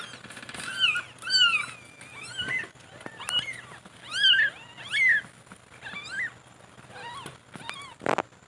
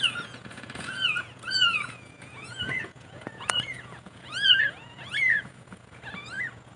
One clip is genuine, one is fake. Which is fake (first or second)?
second